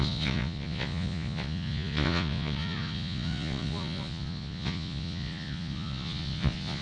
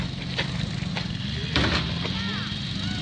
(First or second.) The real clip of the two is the second